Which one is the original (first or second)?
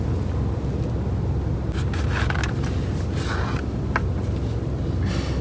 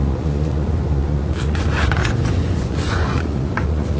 first